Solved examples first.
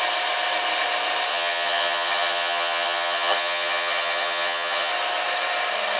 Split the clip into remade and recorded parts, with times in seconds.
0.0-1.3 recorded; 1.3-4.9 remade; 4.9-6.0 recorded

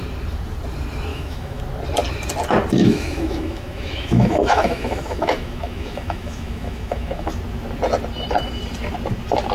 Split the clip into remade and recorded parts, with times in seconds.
0.0-1.1 recorded; 1.1-1.6 remade; 1.6-2.8 recorded; 2.8-7.3 remade; 7.3-9.5 recorded